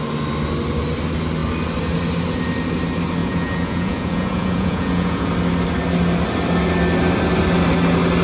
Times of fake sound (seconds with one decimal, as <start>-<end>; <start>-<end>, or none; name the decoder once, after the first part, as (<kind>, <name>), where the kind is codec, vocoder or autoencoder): 3.2-5.3 (vocoder, Vocos)